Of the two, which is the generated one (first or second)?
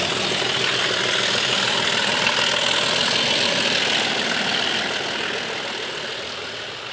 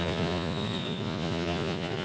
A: second